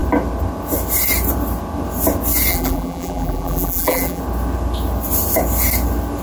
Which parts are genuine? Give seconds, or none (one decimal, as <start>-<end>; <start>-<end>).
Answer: 0.0-2.5; 4.2-6.2